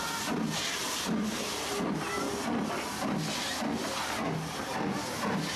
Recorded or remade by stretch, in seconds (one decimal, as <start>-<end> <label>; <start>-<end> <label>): 0.0-5.6 recorded